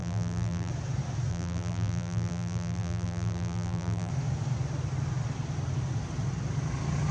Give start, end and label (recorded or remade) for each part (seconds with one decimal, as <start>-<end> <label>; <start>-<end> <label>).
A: 0.0-0.7 remade; 0.7-1.3 recorded; 1.3-4.1 remade; 4.1-7.1 recorded